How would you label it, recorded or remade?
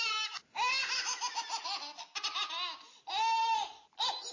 recorded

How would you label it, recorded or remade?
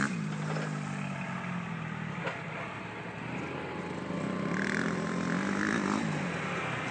recorded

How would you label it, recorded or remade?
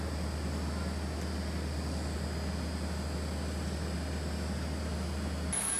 recorded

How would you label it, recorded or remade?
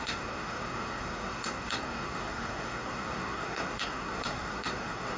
remade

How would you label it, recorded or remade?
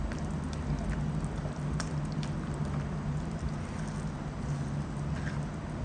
recorded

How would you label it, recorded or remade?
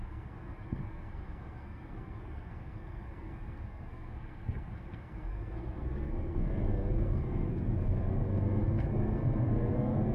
remade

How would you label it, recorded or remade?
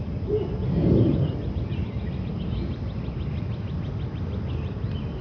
recorded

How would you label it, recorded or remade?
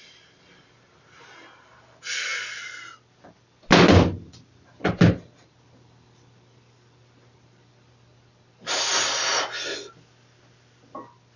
recorded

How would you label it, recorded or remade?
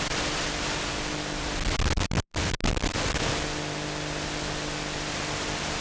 recorded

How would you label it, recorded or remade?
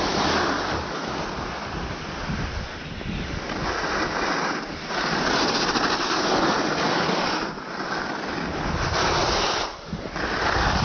recorded